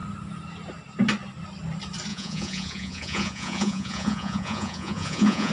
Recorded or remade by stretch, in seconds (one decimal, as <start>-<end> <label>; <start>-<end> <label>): 0.0-2.1 recorded; 2.1-5.5 remade